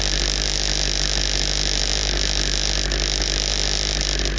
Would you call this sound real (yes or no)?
yes